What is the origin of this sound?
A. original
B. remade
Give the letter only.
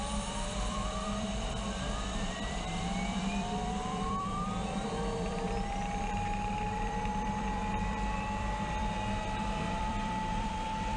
B